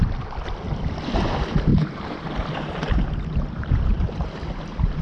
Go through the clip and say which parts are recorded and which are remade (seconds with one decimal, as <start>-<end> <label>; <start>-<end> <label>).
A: 0.0-1.7 recorded; 1.7-5.0 remade